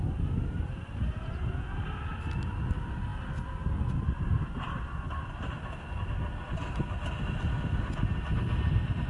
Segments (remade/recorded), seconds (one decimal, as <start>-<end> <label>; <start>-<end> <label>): 0.0-9.1 recorded